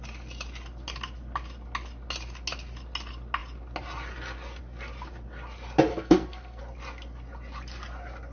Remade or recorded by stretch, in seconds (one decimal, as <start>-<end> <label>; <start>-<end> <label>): 0.0-5.9 recorded; 5.9-6.6 remade; 6.6-8.3 recorded